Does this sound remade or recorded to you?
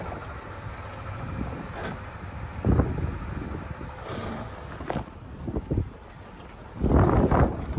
recorded